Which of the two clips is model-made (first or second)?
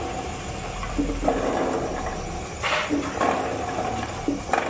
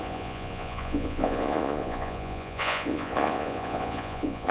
second